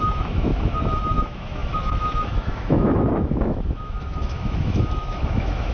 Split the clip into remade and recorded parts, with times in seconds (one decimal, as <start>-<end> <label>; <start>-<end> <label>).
0.0-0.5 remade; 0.5-1.0 recorded; 1.0-5.7 remade